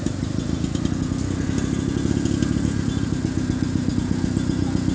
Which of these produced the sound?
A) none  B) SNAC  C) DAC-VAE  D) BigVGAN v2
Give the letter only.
A